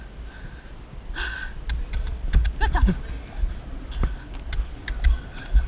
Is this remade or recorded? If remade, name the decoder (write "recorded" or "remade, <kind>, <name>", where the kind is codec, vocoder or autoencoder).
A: recorded